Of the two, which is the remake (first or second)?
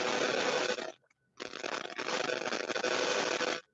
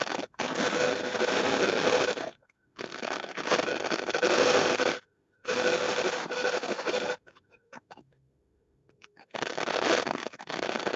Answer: second